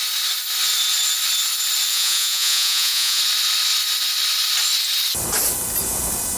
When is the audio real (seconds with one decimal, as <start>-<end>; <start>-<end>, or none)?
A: 0.0-1.9; 3.2-6.4